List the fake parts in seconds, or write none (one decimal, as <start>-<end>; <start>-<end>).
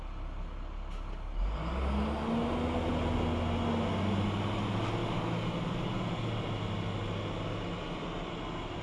none